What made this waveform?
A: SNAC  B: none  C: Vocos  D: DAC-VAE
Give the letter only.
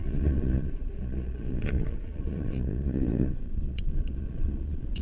C